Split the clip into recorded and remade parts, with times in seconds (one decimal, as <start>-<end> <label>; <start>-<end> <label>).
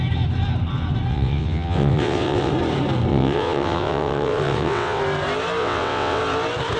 0.0-1.1 recorded; 1.1-2.5 remade; 2.5-3.1 recorded; 3.1-5.0 remade; 5.0-5.6 recorded; 5.6-6.2 remade; 6.2-6.8 recorded